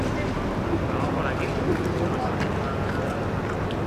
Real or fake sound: real